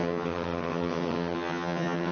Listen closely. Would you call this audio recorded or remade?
remade